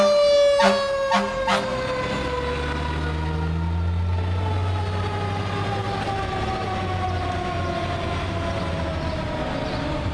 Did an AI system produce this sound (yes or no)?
no